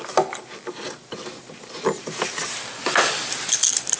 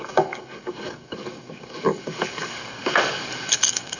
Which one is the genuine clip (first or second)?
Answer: first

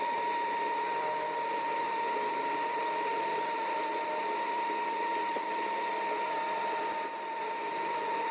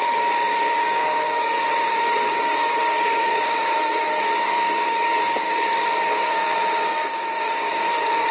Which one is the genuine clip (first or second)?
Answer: first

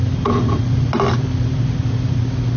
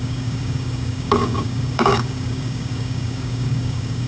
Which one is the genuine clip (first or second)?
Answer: first